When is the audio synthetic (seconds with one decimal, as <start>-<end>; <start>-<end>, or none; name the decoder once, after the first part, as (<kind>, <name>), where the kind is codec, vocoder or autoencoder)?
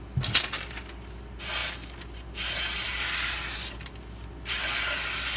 none